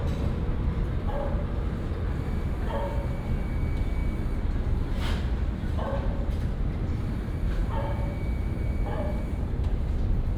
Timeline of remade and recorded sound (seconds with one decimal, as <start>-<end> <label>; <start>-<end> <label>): 0.0-4.0 remade; 4.0-5.6 recorded; 5.6-10.4 remade